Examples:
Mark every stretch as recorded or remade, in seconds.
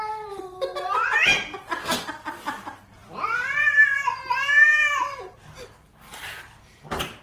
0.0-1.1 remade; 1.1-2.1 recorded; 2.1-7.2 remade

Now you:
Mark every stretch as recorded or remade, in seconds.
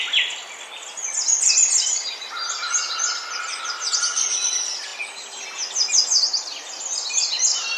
0.0-7.8 recorded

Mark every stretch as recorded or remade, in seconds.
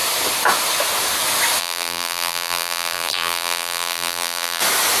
0.0-1.6 recorded; 1.6-4.6 remade; 4.6-5.0 recorded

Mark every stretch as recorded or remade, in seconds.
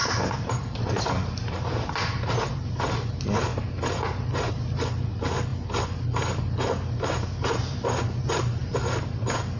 0.0-0.8 remade; 0.8-3.5 recorded; 3.5-4.5 remade; 4.5-9.6 recorded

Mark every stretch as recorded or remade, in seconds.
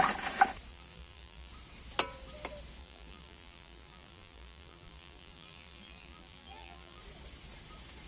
0.0-0.7 recorded; 0.7-1.5 remade; 1.5-2.8 recorded; 2.8-7.0 remade; 7.0-8.1 recorded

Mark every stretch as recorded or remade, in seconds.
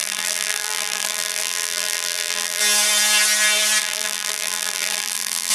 0.0-2.6 remade; 2.6-3.8 recorded; 3.8-5.5 remade